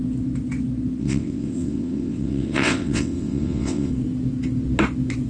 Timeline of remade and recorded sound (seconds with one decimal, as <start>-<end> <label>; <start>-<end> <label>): 0.0-1.0 recorded; 1.0-3.9 remade; 3.9-5.3 recorded